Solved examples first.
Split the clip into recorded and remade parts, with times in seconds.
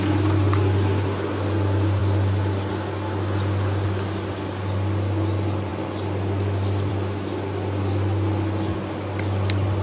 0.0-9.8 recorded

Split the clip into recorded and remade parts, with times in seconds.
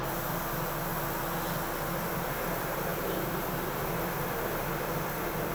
0.0-0.9 remade; 0.9-2.1 recorded; 2.1-5.5 remade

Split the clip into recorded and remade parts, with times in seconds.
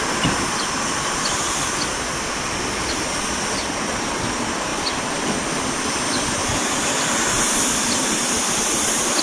0.0-6.4 recorded; 6.4-8.6 remade; 8.6-9.2 recorded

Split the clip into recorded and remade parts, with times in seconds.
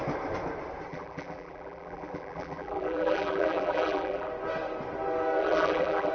0.0-0.9 recorded; 0.9-4.3 remade; 4.3-5.4 recorded; 5.4-6.1 remade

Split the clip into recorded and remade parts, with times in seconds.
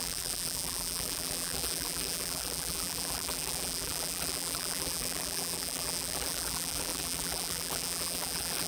0.0-8.7 remade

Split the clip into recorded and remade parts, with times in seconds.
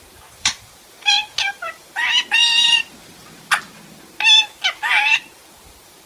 0.0-2.0 remade; 2.0-5.3 recorded; 5.3-6.1 remade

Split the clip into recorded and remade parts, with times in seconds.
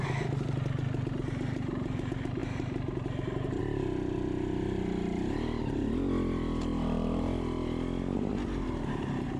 0.0-9.4 recorded